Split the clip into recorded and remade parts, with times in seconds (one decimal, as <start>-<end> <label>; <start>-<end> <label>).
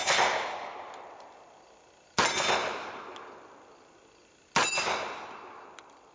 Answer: 0.0-6.1 recorded